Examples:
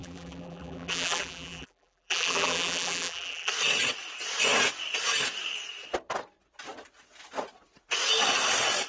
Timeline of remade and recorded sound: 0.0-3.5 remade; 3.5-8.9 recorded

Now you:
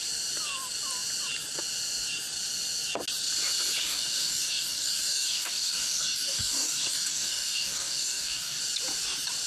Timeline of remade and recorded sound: 0.0-3.8 recorded; 3.8-8.6 remade; 8.6-9.5 recorded

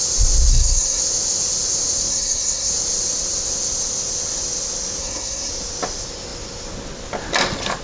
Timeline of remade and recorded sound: 0.0-0.5 recorded; 0.5-1.0 remade; 1.0-2.1 recorded; 2.1-2.7 remade; 2.7-5.0 recorded; 5.0-5.5 remade; 5.5-7.8 recorded

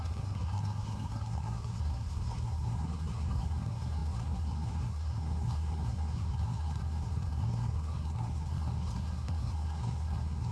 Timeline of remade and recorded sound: 0.0-10.5 remade

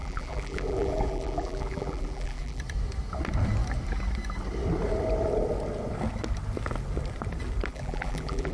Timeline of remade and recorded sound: 0.0-2.6 remade; 2.6-7.7 recorded; 7.7-8.5 remade

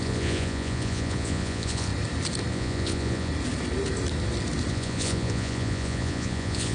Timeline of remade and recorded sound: 0.0-1.9 remade; 1.9-2.5 recorded; 2.5-3.3 remade; 3.3-4.7 recorded; 4.7-6.7 remade